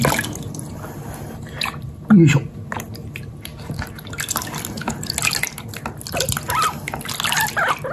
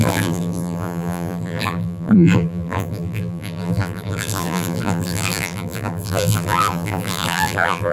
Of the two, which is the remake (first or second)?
second